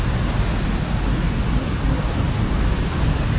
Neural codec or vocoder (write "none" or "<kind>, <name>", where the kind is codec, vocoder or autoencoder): none